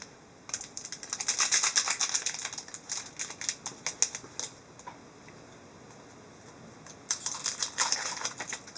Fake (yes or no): no